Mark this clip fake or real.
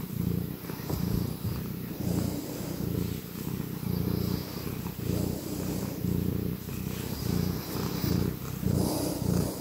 real